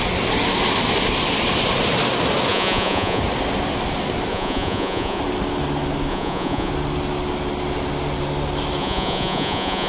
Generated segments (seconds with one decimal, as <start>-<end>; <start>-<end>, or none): 2.5-3.2; 4.3-5.2; 6.1-6.7; 8.8-9.9